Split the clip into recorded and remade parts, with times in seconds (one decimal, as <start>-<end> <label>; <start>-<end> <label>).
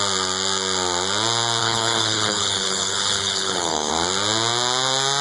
0.0-1.6 recorded; 1.6-3.9 remade; 3.9-5.2 recorded